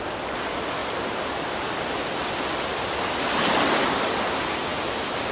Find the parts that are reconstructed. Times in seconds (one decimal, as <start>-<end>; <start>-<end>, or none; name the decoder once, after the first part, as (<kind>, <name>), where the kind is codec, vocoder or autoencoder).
none